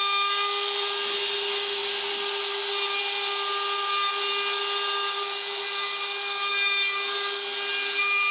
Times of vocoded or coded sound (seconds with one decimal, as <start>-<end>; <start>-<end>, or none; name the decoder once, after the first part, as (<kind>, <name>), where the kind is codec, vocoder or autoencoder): none